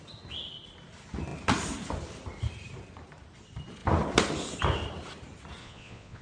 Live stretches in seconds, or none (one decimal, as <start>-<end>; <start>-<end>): 0.0-5.6